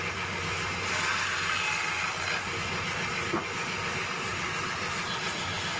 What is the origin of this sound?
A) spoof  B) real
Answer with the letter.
B